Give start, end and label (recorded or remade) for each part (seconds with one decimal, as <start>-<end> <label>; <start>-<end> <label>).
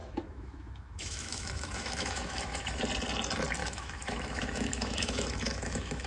0.0-2.8 remade; 2.8-3.6 recorded; 3.6-6.1 remade